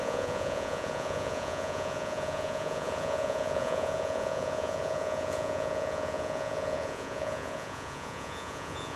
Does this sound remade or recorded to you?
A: remade